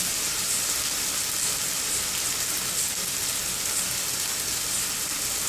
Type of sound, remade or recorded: recorded